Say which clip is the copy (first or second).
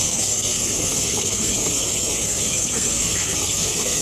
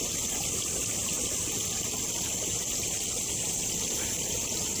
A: first